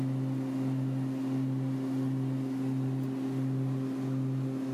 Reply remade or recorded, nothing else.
recorded